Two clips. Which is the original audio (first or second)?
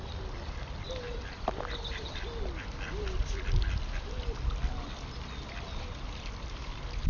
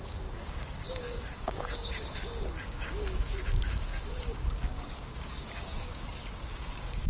first